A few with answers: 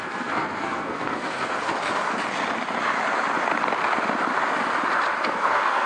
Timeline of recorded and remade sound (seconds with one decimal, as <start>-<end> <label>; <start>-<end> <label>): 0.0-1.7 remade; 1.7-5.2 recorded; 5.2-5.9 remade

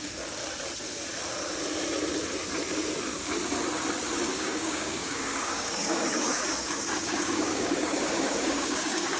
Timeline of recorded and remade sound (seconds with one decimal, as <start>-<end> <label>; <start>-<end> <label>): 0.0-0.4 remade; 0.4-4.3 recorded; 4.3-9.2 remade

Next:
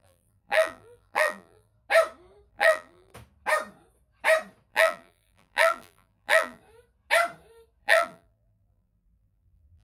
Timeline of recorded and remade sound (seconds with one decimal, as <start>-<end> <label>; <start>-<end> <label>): 0.0-1.7 remade; 1.7-2.5 recorded; 2.5-3.1 remade; 3.1-4.7 recorded; 4.7-6.6 remade; 6.6-7.8 recorded; 7.8-9.8 remade

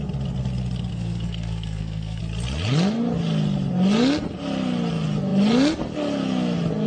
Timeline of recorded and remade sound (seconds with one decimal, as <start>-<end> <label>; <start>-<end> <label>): 0.0-0.9 recorded; 0.9-2.2 remade; 2.2-6.9 recorded

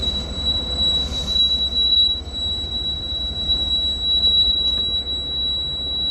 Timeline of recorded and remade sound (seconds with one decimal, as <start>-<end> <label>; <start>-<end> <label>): 0.0-3.7 remade; 3.7-4.2 recorded; 4.2-4.8 remade; 4.8-6.1 recorded

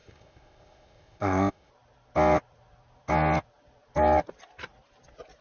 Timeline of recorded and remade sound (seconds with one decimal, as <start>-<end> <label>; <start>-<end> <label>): 0.0-1.7 remade; 1.7-5.4 recorded

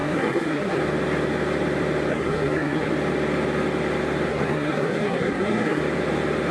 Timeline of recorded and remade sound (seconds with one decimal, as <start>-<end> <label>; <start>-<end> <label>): 0.0-0.8 remade; 0.8-2.1 recorded; 2.1-2.9 remade; 2.9-4.3 recorded; 4.3-5.8 remade; 5.8-6.5 recorded